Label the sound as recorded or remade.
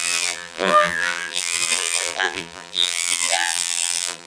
remade